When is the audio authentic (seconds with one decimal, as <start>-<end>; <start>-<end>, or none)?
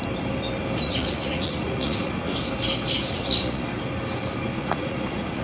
0.0-0.8; 2.3-3.1; 3.7-4.6